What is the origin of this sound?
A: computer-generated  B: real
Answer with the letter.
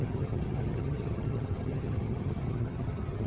A